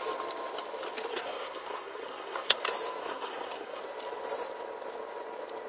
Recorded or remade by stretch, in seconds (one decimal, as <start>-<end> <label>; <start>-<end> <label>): 0.0-1.1 recorded; 1.1-2.6 remade; 2.6-3.0 recorded; 3.0-3.8 remade; 3.8-5.7 recorded